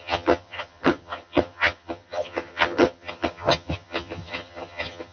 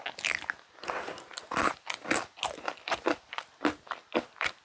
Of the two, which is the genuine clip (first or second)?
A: second